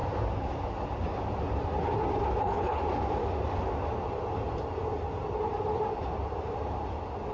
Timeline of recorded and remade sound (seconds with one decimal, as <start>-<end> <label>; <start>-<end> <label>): 0.0-2.4 recorded; 2.4-2.8 remade; 2.8-7.3 recorded